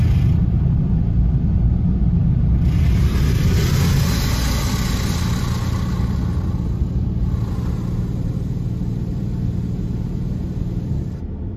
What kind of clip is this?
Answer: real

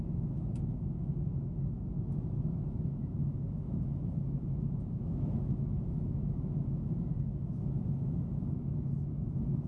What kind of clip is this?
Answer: fake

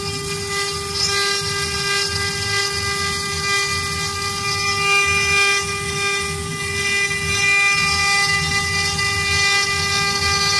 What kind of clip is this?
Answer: real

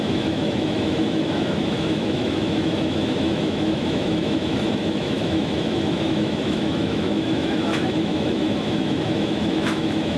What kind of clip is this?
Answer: fake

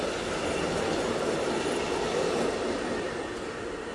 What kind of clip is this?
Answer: real